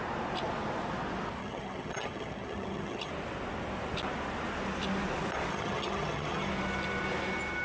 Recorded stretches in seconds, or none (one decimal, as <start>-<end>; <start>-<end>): 0.0-1.4; 3.1-5.5; 6.5-7.6